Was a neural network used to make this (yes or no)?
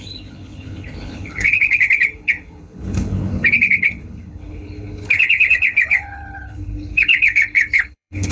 yes